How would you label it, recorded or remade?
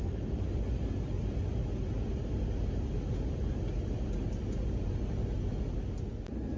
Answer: recorded